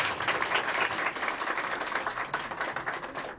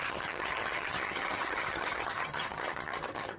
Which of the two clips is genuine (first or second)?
first